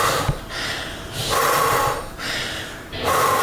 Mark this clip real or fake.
real